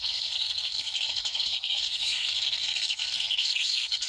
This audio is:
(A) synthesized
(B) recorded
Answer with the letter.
A